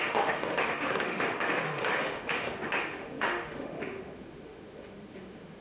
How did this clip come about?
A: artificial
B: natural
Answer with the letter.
A